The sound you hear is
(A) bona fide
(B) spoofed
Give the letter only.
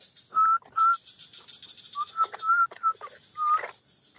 A